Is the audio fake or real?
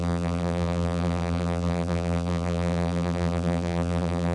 fake